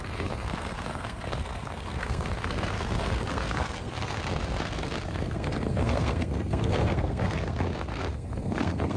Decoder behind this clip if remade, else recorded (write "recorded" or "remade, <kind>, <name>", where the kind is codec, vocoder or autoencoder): remade, codec, SNAC